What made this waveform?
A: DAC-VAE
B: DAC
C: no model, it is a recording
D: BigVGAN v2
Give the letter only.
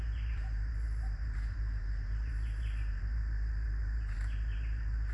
D